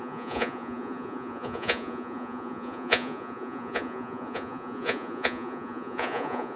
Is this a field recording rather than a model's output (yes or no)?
no